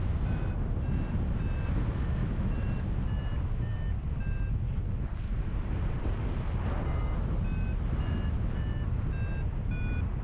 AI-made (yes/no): no